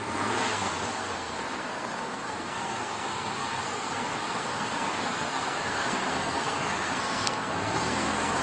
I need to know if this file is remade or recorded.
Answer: remade